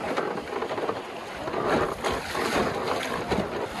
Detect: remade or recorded recorded